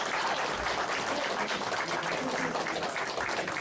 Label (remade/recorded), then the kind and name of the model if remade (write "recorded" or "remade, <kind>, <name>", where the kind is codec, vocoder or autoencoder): recorded